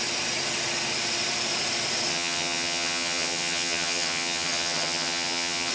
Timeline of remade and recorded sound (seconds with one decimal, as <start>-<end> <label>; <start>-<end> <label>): 0.0-2.1 recorded; 2.1-5.7 remade